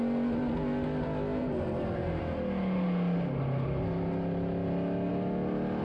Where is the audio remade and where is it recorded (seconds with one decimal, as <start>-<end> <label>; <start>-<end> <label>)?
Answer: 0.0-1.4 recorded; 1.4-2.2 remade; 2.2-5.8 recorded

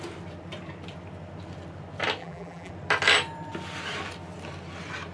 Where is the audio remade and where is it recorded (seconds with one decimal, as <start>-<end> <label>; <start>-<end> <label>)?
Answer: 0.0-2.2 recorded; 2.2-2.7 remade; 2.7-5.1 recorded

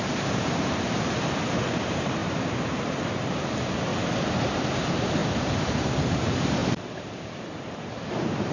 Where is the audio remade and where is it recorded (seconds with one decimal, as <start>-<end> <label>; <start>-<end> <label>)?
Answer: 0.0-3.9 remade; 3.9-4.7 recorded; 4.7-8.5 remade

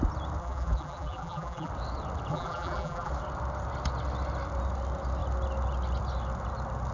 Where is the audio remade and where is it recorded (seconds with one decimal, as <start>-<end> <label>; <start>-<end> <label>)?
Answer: 0.0-0.4 recorded; 0.4-1.7 remade; 1.7-2.3 recorded; 2.3-3.1 remade; 3.1-6.9 recorded

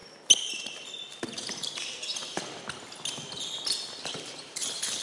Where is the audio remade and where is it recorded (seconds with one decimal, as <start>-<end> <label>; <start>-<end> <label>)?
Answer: 0.0-0.5 recorded; 0.5-2.2 remade; 2.2-4.0 recorded; 4.0-5.0 remade

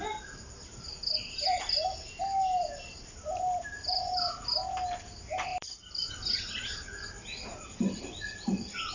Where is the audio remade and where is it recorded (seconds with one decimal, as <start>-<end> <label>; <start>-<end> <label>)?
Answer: 0.0-5.5 recorded; 5.5-6.1 remade; 6.1-8.9 recorded

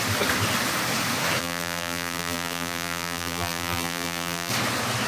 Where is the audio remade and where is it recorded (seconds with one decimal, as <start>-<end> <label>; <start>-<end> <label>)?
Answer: 0.0-1.4 recorded; 1.4-4.5 remade; 4.5-5.1 recorded